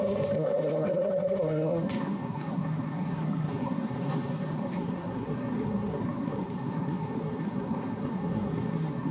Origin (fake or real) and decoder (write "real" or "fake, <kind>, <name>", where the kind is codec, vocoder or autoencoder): fake, codec, SNAC